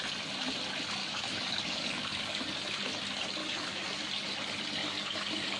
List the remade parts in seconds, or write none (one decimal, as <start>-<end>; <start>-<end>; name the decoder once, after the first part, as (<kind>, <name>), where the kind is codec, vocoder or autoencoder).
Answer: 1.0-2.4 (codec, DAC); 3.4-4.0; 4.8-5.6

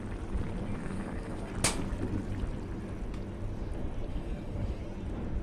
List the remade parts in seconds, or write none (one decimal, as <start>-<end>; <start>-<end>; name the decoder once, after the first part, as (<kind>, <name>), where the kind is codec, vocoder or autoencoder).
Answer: 0.8-1.5 (codec, DAC); 4.1-4.8

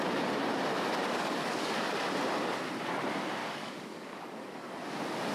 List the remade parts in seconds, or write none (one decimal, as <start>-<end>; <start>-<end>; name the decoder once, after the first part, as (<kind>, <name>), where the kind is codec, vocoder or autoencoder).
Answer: 1.0-1.7 (codec, DAC); 3.4-4.7

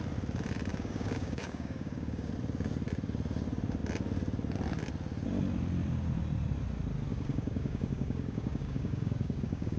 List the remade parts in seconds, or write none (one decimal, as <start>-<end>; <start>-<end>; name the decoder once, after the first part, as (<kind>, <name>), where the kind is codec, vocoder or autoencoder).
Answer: 0.7-2.3 (codec, DAC); 7.1-9.8

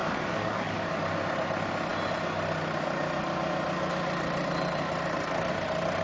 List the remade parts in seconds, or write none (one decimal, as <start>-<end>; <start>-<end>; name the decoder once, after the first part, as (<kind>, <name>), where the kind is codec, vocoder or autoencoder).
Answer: 0.0-1.0 (codec, DAC)

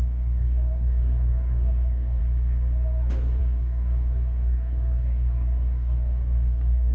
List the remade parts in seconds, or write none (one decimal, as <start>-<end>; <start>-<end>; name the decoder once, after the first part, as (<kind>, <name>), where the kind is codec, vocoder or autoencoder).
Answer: 0.0-2.2 (codec, DAC); 3.4-6.9

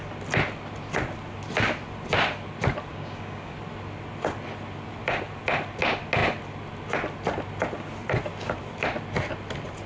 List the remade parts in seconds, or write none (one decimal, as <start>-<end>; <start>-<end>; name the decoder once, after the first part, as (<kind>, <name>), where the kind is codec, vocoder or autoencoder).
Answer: 2.9-3.5 (codec, DAC)

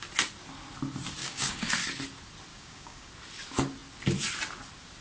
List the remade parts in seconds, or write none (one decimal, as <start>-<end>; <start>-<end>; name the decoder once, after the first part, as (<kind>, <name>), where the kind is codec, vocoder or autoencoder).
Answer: 1.2-1.7 (codec, DAC); 2.5-3.1